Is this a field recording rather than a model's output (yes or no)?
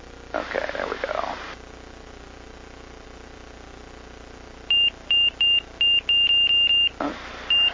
yes